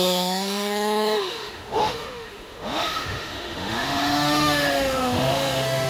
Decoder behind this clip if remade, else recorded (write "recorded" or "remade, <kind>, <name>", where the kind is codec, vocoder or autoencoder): remade, autoencoder, DAC-VAE